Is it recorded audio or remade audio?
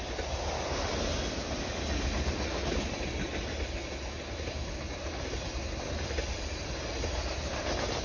recorded